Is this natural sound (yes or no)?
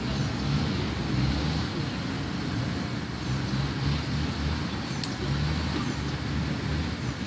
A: yes